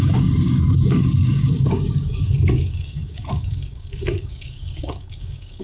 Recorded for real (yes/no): no